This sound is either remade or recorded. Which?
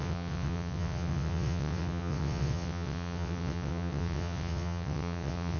remade